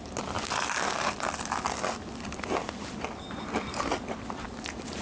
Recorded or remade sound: recorded